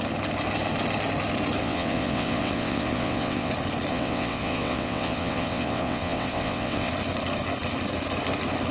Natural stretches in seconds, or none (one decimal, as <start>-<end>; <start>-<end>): 0.0-1.6; 3.5-3.9; 6.9-8.7